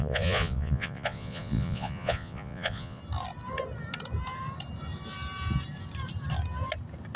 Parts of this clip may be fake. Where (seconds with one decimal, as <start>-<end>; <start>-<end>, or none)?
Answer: 0.0-3.0